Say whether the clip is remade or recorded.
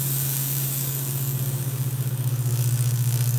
remade